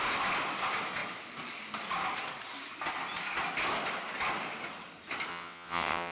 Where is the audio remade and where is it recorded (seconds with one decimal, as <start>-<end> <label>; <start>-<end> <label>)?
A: 0.0-5.3 recorded; 5.3-6.1 remade